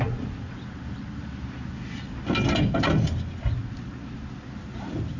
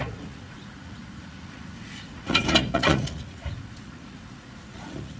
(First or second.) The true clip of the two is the first